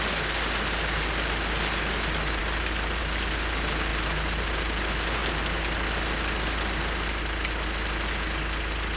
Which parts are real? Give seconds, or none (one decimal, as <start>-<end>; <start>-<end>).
0.0-9.0